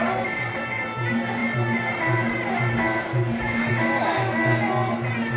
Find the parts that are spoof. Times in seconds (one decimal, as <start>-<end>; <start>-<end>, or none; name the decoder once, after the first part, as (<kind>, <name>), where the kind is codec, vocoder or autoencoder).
none